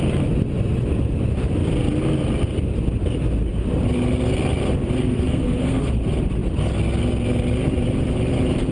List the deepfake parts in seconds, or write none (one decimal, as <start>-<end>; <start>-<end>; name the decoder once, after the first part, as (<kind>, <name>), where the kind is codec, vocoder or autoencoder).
5.1-5.9 (codec, SNAC)